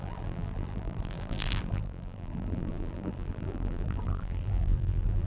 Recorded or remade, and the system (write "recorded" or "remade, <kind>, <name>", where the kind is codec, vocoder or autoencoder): remade, vocoder, BigVGAN v2